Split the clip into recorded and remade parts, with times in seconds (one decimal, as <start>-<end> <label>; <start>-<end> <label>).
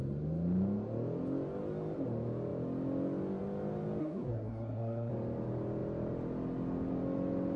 0.0-4.0 recorded; 4.0-5.1 remade; 5.1-7.6 recorded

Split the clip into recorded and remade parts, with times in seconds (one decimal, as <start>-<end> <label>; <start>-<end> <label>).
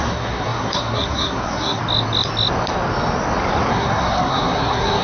0.0-1.8 remade; 1.8-3.7 recorded; 3.7-5.0 remade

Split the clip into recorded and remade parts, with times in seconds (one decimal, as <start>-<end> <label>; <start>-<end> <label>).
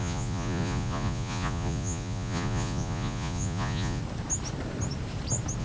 0.0-4.0 remade; 4.0-5.6 recorded